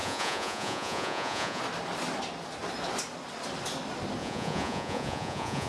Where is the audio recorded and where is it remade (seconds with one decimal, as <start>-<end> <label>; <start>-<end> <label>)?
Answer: 0.0-1.6 remade; 1.6-4.2 recorded; 4.2-5.7 remade